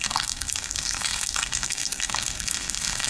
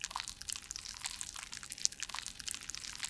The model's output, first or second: first